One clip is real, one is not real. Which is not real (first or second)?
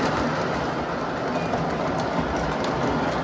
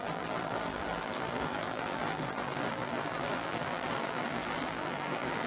second